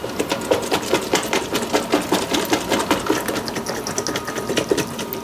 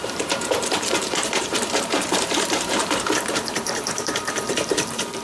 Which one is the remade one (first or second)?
second